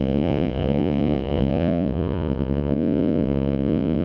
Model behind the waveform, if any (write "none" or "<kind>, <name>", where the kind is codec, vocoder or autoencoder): vocoder, Vocos